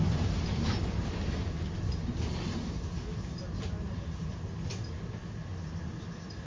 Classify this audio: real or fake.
real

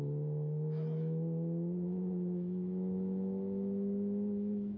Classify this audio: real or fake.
fake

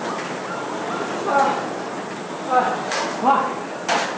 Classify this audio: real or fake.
real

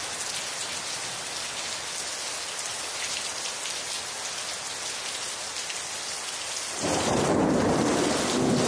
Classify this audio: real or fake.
real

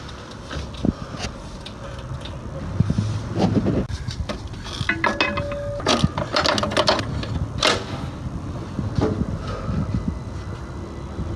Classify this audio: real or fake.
real